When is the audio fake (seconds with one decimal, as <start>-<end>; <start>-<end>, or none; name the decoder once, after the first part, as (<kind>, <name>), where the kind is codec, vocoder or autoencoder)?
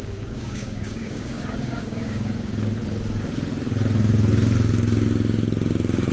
0.0-2.8 (codec, DAC)